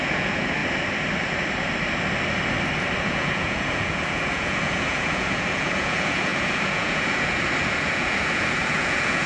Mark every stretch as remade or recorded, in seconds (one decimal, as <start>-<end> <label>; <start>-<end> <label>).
0.0-0.6 remade; 0.6-3.0 recorded; 3.0-9.3 remade